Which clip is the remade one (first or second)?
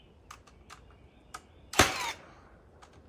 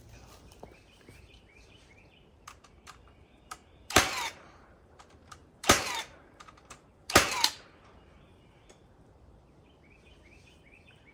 second